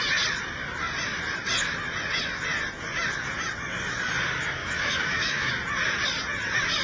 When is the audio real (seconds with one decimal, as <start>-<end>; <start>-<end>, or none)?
0.0-4.6; 5.5-6.8